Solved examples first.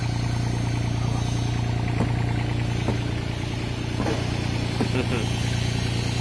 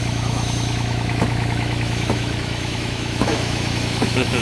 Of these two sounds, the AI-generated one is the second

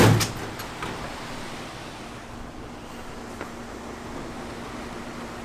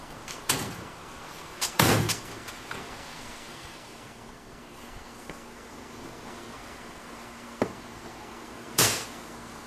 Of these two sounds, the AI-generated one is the second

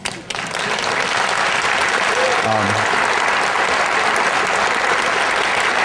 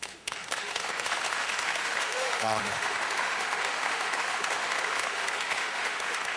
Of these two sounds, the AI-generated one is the second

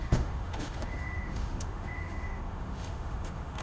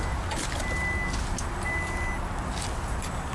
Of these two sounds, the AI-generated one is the first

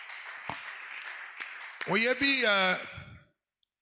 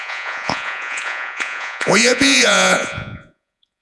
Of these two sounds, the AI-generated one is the second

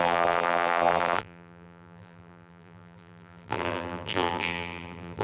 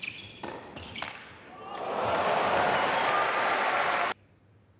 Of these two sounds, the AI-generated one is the first